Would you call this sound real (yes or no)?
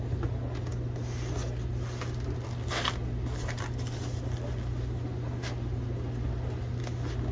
yes